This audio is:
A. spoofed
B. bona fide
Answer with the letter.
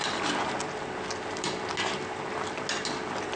B